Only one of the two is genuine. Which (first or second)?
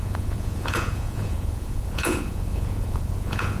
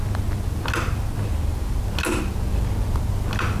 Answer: second